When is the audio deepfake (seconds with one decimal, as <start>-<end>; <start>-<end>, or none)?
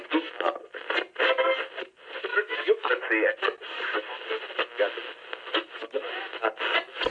2.3-2.9